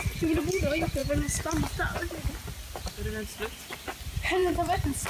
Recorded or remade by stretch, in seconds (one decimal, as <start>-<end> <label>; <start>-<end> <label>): 0.0-4.4 recorded; 4.4-5.1 remade